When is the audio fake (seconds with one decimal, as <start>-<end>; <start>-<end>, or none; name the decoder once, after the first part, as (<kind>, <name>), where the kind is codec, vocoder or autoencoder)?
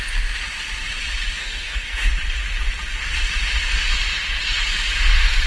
1.4-2.1 (codec, SNAC)